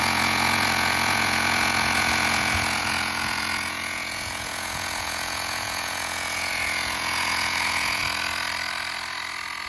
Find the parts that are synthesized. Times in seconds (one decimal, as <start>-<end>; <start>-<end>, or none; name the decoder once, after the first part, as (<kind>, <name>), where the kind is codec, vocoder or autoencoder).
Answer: 0.0-8.0 (vocoder, Vocos)